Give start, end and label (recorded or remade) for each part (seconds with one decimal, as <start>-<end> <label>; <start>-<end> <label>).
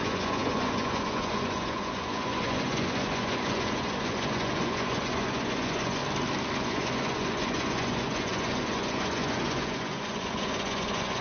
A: 0.0-6.0 remade; 6.0-6.6 recorded; 6.6-11.2 remade